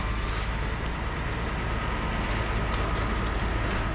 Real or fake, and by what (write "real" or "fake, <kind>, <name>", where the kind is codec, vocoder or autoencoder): real